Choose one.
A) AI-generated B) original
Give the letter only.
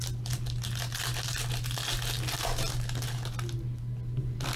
B